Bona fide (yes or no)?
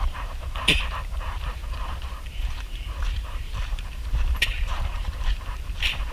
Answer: no